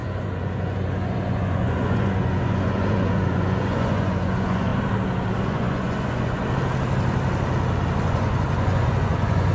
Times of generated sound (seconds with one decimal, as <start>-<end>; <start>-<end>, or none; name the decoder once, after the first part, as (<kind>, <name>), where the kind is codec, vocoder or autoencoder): 0.0-4.7 (vocoder, Vocos); 5.4-6.4; 8.0-9.5